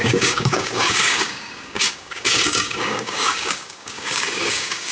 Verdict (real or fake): fake